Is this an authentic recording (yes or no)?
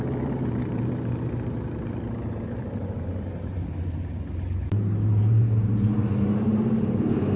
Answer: no